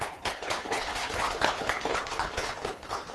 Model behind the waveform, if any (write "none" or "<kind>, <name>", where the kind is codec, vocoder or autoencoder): codec, HILCodec